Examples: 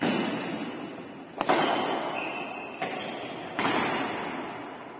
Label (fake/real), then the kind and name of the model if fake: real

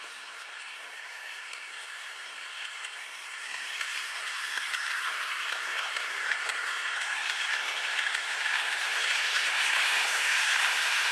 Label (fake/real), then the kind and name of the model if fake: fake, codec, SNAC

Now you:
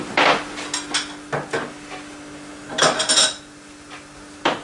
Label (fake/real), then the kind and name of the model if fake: real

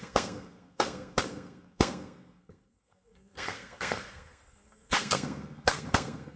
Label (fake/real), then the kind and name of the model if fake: fake, codec, SNAC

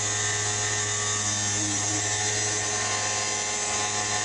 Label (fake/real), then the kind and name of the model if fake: real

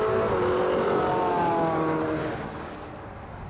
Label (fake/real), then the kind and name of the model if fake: real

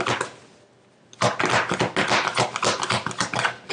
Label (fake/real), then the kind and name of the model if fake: real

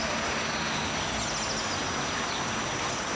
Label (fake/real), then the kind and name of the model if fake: real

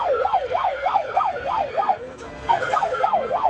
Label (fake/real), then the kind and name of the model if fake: fake, codec, SNAC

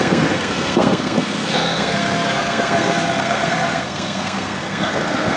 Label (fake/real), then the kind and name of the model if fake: fake, codec, SNAC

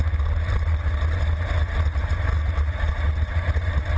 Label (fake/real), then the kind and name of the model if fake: real